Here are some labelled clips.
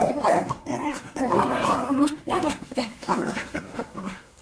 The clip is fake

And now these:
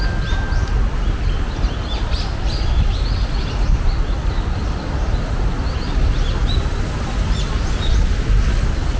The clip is real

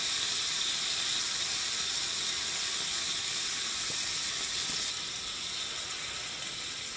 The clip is real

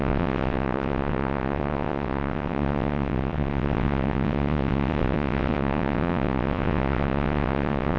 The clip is fake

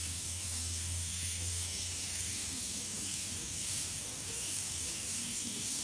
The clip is fake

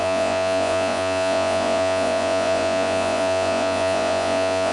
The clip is fake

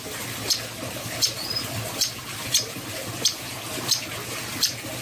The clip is fake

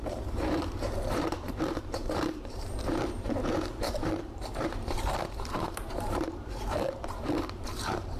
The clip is fake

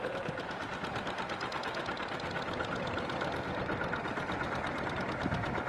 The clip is real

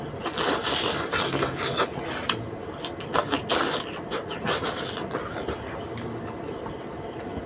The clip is real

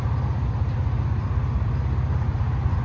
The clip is real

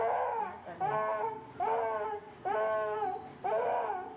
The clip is real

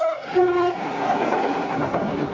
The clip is fake